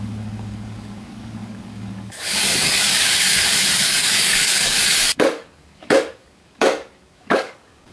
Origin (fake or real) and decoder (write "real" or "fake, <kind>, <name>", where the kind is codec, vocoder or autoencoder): fake, codec, DAC